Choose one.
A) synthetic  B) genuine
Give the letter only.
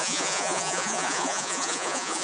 A